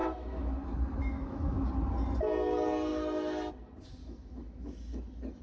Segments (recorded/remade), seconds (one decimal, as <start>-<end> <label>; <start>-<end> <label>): 0.0-1.7 remade; 1.7-2.9 recorded; 2.9-3.5 remade; 3.5-4.0 recorded; 4.0-5.4 remade

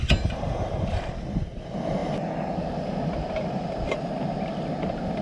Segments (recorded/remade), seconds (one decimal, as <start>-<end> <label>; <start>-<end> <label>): 0.0-5.2 recorded

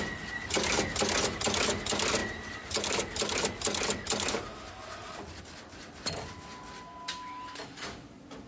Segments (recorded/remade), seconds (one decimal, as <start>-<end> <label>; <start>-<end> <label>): 0.0-8.5 recorded

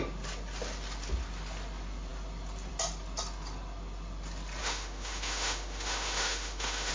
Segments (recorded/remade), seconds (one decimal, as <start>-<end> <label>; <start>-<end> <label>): 0.0-4.6 recorded; 4.6-6.9 remade